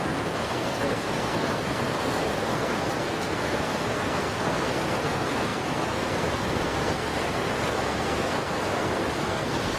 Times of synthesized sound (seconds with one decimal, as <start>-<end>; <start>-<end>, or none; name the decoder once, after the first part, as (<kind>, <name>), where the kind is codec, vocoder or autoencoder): 0.0-9.8 (codec, SNAC)